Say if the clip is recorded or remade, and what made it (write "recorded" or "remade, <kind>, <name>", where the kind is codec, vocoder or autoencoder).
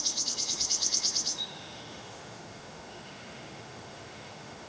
remade, autoencoder, DAC-VAE